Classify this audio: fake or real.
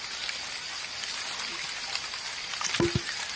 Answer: real